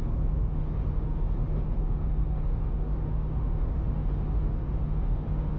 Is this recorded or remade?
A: remade